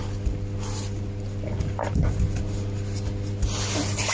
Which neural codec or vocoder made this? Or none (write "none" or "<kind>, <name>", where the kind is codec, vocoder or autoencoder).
none